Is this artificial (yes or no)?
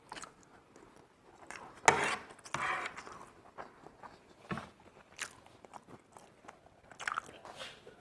no